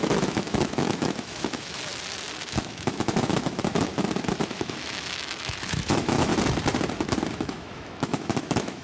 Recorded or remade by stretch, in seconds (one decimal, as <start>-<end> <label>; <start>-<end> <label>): 0.0-1.9 remade; 1.9-2.5 recorded; 2.5-3.9 remade; 3.9-4.5 recorded; 4.5-6.3 remade; 6.3-7.4 recorded; 7.4-8.8 remade